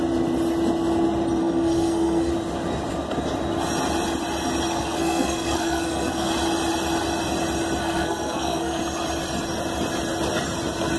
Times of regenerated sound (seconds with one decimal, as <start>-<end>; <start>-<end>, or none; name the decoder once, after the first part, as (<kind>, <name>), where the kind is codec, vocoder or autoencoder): 1.4-2.3 (codec, SNAC); 4.7-6.3; 7.8-8.8